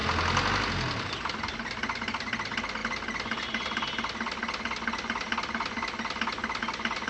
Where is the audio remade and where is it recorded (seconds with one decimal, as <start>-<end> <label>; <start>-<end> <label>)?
0.0-7.1 recorded